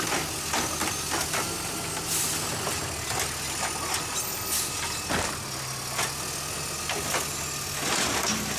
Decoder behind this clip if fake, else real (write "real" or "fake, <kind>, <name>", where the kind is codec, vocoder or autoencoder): real